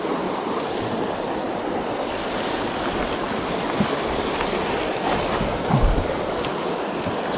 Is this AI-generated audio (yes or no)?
no